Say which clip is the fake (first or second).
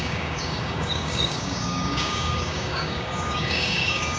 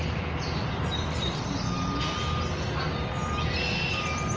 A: first